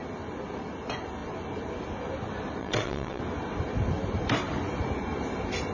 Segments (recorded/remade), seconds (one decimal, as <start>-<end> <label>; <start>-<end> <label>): 0.0-2.6 recorded; 2.6-3.2 remade; 3.2-5.7 recorded